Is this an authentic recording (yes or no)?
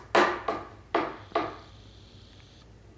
yes